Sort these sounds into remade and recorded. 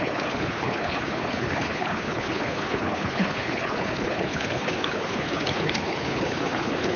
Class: remade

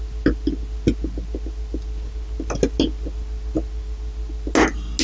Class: recorded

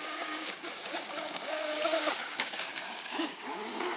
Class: remade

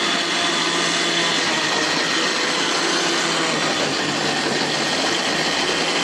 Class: recorded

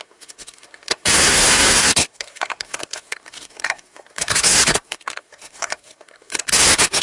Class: remade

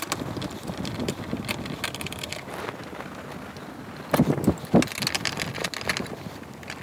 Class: recorded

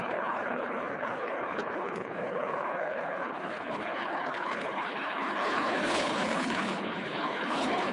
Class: remade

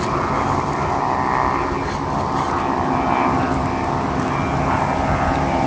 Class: recorded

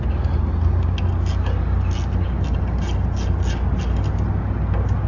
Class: recorded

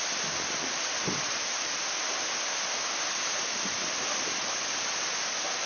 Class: recorded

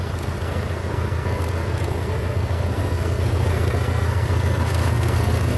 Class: remade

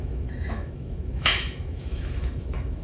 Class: remade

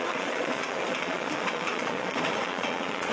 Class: remade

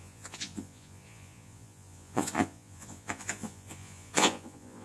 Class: remade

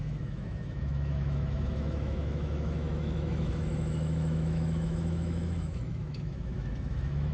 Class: remade